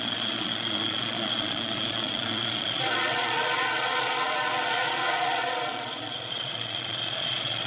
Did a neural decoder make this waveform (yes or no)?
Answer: yes